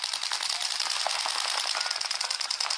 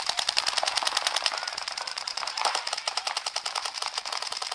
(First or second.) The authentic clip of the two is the first